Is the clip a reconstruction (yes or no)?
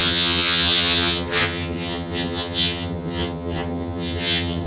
yes